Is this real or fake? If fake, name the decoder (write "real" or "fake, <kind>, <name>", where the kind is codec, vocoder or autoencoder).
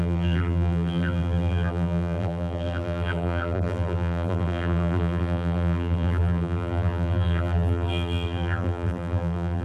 fake, vocoder, BigVGAN v2